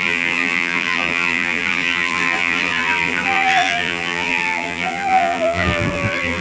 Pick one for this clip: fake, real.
fake